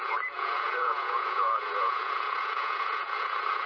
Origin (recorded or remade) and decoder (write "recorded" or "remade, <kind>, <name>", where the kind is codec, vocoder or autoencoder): remade, vocoder, Vocos